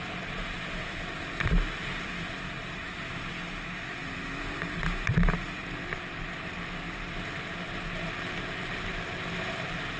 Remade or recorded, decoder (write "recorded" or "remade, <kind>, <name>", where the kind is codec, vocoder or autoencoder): recorded